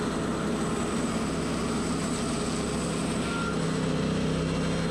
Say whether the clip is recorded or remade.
recorded